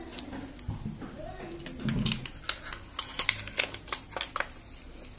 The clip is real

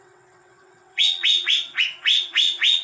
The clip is fake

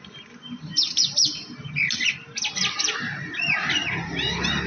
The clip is real